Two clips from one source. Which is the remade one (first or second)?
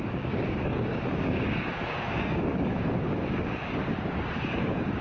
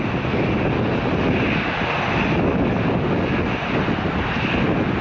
first